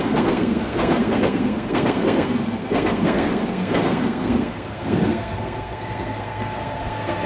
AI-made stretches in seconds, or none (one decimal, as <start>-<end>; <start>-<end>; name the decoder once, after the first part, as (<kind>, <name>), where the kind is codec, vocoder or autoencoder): 0.0-7.3 (codec, SNAC)